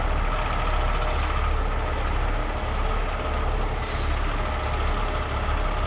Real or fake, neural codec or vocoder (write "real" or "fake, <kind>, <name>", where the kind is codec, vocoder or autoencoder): real